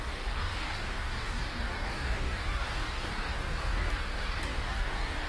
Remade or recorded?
remade